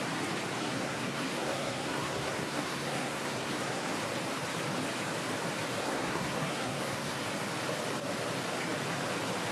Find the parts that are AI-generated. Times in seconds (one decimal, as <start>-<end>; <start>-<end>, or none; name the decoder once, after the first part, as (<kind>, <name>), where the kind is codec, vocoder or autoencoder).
0.6-3.9 (codec, SNAC); 5.8-7.2

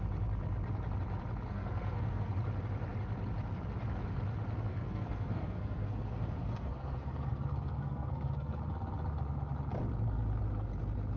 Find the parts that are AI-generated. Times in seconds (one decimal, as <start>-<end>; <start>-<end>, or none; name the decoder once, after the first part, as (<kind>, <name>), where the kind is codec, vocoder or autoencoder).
1.5-2.3 (codec, SNAC); 4.7-8.6

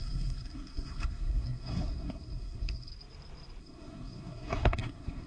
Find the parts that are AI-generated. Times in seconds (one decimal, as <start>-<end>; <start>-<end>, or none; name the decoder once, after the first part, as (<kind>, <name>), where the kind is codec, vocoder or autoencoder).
0.0-2.9 (codec, SNAC); 3.6-5.3

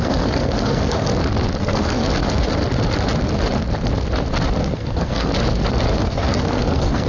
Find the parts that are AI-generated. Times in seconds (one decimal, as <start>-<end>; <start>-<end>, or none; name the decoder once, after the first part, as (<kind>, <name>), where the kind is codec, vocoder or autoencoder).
0.0-1.1 (codec, SNAC); 1.6-2.0; 4.6-5.3; 6.0-7.1

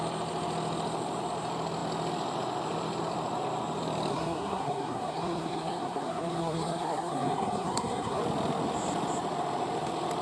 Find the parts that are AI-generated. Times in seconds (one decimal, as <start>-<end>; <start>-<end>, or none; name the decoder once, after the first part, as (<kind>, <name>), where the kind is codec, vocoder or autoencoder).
4.1-8.2 (codec, SNAC)

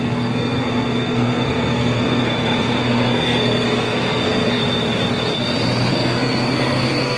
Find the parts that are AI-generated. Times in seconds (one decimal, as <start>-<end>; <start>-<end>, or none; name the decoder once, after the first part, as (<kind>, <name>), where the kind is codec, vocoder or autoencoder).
0.0-4.6 (codec, SNAC); 5.9-7.2

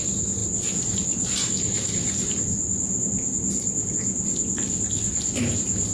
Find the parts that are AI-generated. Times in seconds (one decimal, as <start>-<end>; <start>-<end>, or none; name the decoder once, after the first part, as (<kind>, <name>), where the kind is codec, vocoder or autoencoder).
none

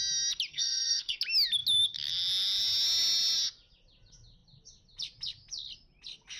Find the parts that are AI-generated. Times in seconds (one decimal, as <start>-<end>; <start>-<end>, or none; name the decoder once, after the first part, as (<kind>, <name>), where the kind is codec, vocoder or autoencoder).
0.5-1.2 (codec, SNAC)